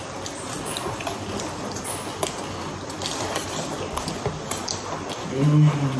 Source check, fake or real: real